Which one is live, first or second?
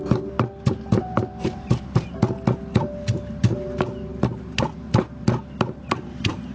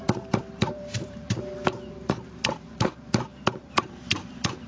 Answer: first